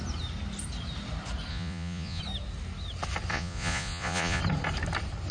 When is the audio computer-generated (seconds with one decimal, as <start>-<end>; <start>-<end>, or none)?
1.5-2.2; 3.3-4.4